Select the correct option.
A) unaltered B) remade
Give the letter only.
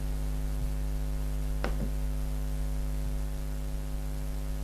A